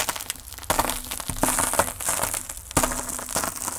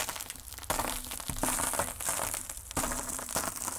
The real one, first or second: first